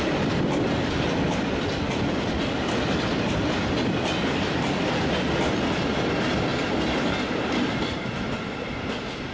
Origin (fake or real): real